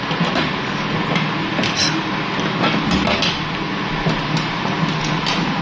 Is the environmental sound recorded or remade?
recorded